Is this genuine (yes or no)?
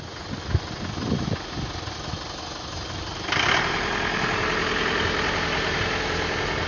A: yes